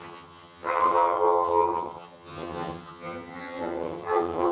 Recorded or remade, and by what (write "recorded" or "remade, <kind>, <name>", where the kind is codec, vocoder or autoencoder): remade, vocoder, HiFi-GAN